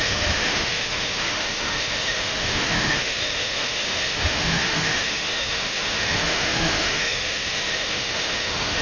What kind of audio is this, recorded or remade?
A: remade